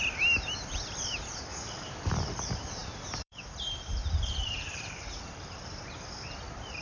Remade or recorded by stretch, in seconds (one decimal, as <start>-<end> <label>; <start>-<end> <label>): 0.0-1.5 recorded; 1.5-2.2 remade; 2.2-2.8 recorded; 2.8-5.0 remade; 5.0-6.8 recorded